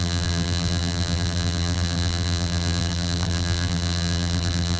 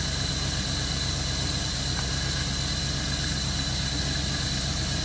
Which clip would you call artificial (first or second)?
first